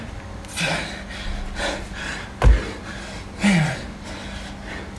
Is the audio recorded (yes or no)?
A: yes